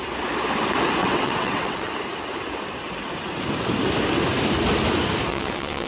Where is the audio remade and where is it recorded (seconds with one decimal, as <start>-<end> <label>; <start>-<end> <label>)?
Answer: 0.0-1.0 recorded; 1.0-1.9 remade; 1.9-5.3 recorded; 5.3-5.9 remade